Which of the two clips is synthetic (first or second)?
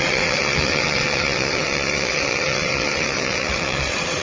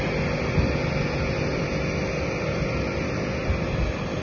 first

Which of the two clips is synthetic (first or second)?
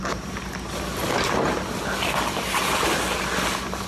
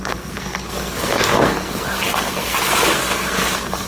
second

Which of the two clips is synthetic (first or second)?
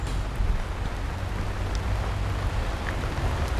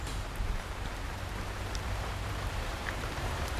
second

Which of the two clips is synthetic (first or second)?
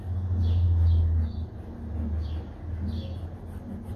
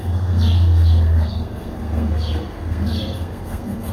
second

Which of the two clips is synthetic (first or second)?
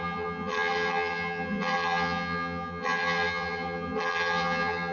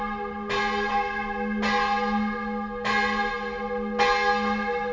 first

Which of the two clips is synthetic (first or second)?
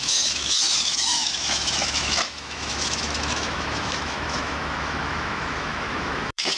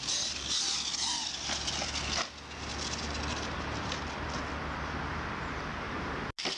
first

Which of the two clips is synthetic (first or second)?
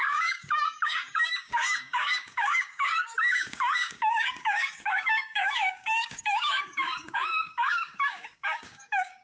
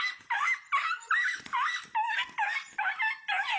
first